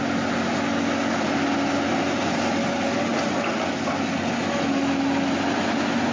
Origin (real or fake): real